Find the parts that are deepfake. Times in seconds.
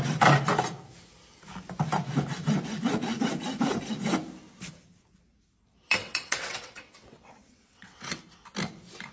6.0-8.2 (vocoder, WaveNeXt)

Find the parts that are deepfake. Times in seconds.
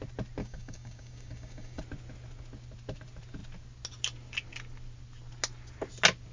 0.4-1.8 (codec, DAC)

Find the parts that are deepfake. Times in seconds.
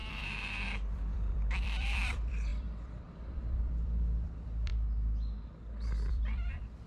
0.0-4.7 (vocoder, BigVGAN v2); 6.1-6.9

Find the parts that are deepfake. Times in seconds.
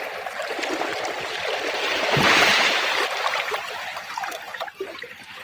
0.0-0.9 (vocoder, BigVGAN v2); 1.7-2.5; 3.7-5.4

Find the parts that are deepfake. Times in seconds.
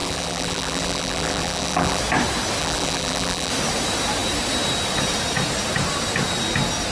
0.0-2.0 (vocoder, BigVGAN v2); 2.6-3.5